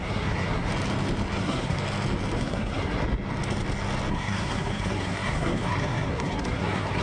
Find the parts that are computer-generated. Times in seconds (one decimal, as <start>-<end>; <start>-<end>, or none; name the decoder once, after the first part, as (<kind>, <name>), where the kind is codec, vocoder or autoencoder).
0.0-0.7 (codec, SNAC); 1.4-1.8; 2.4-3.0; 4.1-7.0